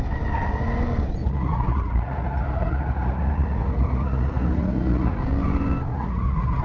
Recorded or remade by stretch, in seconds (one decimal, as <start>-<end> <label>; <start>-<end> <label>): 0.0-1.2 recorded; 1.2-5.2 remade; 5.2-5.9 recorded; 5.9-6.6 remade